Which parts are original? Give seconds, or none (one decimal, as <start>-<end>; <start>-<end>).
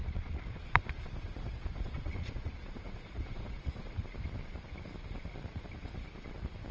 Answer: 4.0-6.7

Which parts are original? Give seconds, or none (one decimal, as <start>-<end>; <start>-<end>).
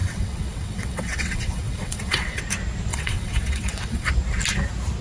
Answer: 2.4-2.9; 4.1-5.0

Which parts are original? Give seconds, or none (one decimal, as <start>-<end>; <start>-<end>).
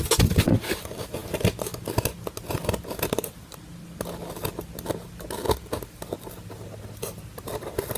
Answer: 0.0-8.0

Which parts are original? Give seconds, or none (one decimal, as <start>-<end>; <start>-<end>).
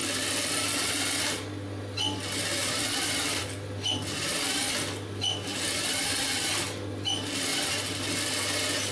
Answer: 0.0-8.9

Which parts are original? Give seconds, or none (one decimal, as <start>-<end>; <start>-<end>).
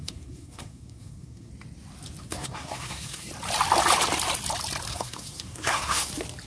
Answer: 1.5-2.2; 3.3-4.9; 6.1-6.5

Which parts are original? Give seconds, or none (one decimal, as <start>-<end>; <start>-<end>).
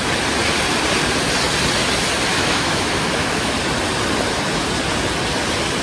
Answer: 0.0-2.3; 3.5-5.8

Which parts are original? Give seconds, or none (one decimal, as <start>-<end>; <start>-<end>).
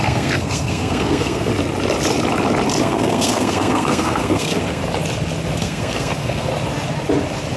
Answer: 1.5-2.8; 4.8-5.6; 6.5-7.6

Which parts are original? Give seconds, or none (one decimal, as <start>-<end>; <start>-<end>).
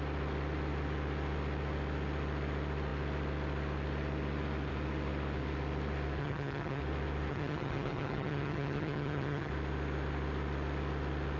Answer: 0.0-6.2; 6.8-7.3; 9.5-11.4